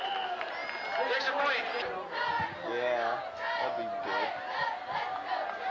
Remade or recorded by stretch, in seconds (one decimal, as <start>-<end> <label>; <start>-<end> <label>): 0.0-5.7 recorded